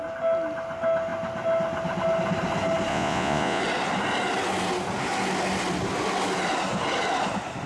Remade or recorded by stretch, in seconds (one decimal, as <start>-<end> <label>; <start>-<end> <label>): 0.0-2.9 recorded; 2.9-3.6 remade; 3.6-7.7 recorded